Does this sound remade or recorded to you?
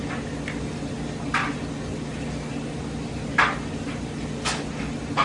recorded